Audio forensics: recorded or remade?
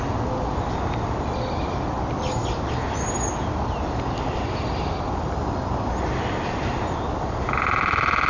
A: recorded